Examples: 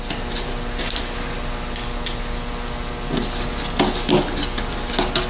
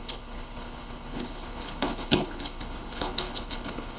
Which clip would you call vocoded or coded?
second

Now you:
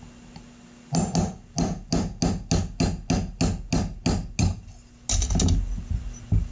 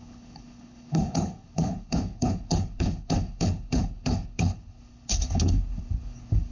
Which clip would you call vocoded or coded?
second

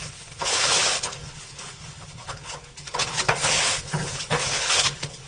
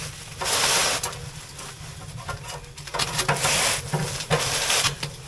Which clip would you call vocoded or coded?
first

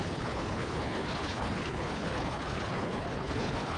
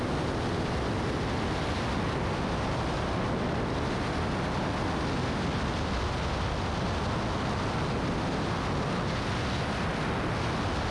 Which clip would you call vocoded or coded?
first